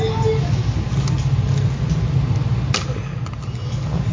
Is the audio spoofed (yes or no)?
no